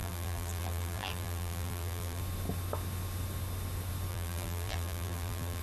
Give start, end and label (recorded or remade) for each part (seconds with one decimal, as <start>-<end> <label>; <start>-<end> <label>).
0.0-2.2 remade; 2.2-4.1 recorded; 4.1-5.6 remade